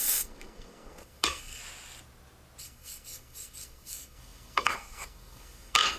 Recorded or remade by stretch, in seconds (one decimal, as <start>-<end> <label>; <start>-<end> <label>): 0.0-1.6 remade; 1.6-2.6 recorded; 2.6-6.0 remade